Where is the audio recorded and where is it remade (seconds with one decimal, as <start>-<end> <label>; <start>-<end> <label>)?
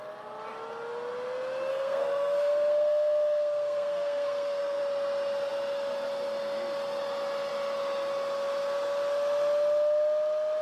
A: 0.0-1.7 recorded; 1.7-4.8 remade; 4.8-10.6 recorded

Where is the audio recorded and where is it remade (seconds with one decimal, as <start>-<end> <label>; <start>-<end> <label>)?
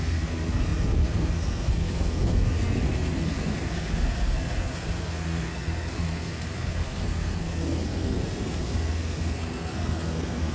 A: 0.0-10.5 remade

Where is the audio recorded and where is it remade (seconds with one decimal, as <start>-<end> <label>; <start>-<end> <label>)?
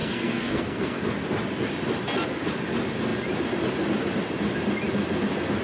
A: 0.0-1.0 remade; 1.0-5.6 recorded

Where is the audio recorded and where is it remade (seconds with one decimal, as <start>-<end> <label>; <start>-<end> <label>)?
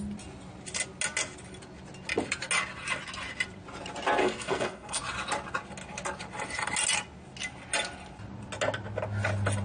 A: 0.0-4.2 recorded; 4.2-5.0 remade; 5.0-9.6 recorded